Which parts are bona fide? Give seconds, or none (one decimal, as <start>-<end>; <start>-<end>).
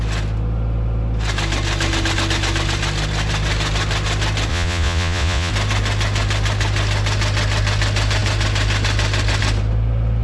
0.0-4.5; 5.5-10.2